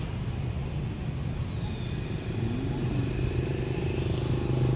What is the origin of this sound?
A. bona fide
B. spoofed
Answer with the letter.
A